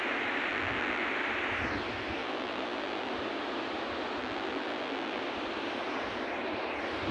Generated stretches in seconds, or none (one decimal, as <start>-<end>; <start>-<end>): 0.5-1.0; 2.2-3.1; 4.2-5.2

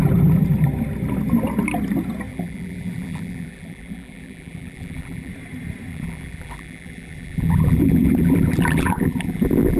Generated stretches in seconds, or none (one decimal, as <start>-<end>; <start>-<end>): 2.3-5.3; 5.9-9.8